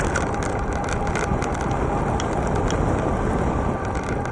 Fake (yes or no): no